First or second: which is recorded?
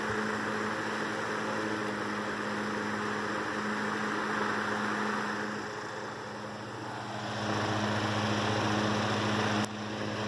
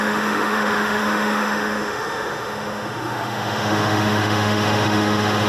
first